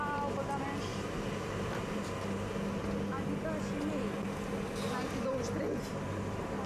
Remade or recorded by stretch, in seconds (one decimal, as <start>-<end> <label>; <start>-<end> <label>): 0.0-0.9 recorded; 0.9-2.2 remade; 2.2-6.7 recorded